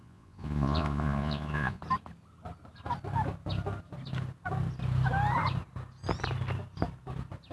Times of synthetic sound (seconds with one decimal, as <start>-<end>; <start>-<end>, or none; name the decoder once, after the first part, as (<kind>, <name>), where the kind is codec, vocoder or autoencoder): 0.0-1.8 (vocoder, Vocos)